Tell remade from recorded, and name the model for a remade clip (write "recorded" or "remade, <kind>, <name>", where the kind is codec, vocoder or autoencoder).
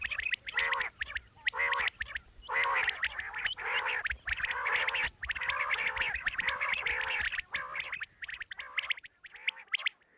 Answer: recorded